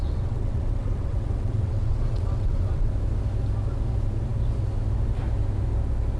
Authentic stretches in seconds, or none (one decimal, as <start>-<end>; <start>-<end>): 2.9-6.2